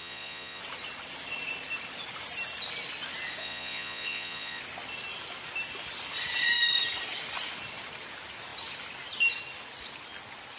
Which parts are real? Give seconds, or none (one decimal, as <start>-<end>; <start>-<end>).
0.6-3.4; 4.6-10.6